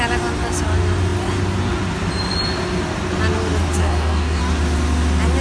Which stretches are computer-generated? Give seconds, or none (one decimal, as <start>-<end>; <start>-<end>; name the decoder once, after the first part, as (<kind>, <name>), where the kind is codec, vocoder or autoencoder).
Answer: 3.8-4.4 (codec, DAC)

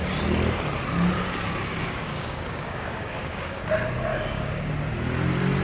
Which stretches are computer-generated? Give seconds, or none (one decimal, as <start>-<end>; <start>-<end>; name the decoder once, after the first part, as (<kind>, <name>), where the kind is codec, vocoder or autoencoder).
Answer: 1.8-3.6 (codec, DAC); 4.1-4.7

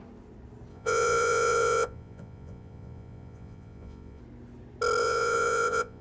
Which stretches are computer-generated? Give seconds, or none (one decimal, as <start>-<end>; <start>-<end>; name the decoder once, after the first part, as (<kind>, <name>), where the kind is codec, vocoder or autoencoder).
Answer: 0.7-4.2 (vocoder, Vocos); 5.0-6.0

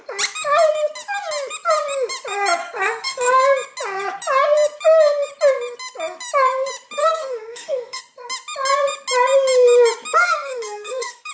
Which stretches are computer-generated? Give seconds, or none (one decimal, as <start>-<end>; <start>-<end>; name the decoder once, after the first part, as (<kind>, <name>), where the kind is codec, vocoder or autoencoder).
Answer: 2.6-3.4 (codec, SNAC); 7.0-8.0; 10.2-11.3

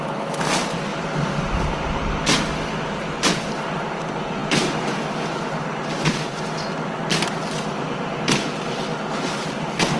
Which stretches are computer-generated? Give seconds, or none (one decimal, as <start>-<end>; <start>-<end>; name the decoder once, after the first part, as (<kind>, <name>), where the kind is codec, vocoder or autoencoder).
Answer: none